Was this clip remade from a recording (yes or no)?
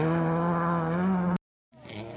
no